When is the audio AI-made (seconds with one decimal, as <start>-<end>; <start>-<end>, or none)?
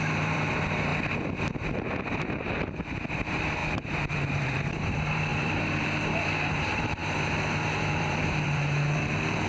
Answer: 0.0-0.9; 3.1-3.6; 4.1-9.5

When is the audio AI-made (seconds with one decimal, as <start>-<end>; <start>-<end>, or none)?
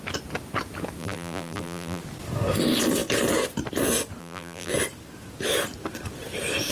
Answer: 1.0-2.0; 4.2-4.7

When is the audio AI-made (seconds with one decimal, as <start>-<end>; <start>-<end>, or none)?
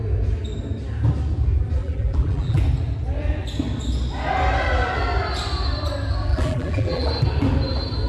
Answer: 1.8-2.6; 6.3-7.1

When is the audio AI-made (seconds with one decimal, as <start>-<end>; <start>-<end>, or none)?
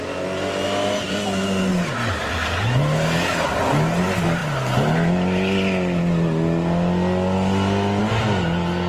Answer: 1.7-2.3